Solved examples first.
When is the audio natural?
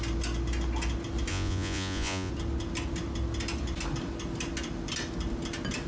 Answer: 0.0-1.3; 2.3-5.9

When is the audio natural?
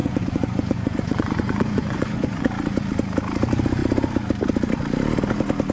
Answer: 2.5-5.7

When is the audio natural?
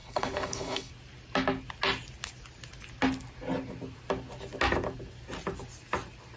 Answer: 0.9-6.4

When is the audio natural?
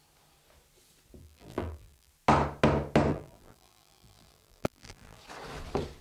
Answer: 0.0-1.2; 2.1-3.1; 5.2-6.0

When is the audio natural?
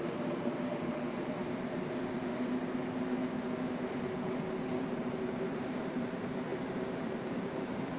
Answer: 2.3-4.8